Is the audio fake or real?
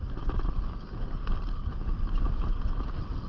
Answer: real